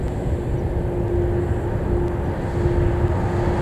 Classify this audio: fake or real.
real